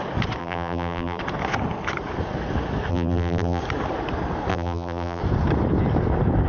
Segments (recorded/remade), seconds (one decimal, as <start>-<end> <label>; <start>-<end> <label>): 0.0-0.4 recorded; 0.4-1.2 remade; 1.2-2.9 recorded; 2.9-3.6 remade; 3.6-4.5 recorded; 4.5-5.2 remade; 5.2-6.5 recorded